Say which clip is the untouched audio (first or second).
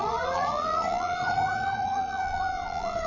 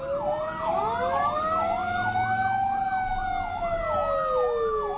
second